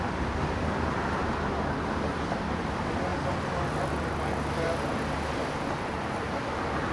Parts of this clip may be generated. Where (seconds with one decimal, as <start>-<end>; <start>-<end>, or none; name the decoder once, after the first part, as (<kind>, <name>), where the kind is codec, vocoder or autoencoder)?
0.0-1.2 (vocoder, BigVGAN v2); 2.1-3.1; 6.0-6.9